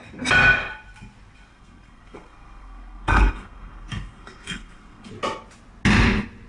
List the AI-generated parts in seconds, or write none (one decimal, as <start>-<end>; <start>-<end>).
1.5-5.1